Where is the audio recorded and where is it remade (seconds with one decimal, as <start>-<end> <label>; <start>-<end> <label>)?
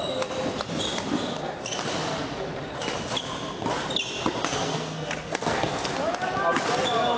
0.0-4.4 recorded; 4.4-5.9 remade; 5.9-7.2 recorded